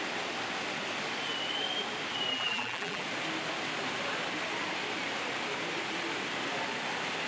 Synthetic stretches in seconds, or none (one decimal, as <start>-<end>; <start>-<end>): 2.3-3.0